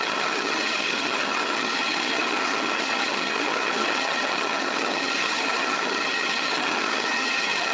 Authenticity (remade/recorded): remade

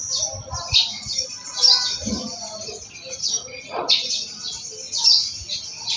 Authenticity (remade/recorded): recorded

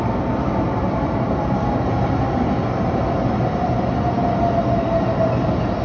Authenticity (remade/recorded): recorded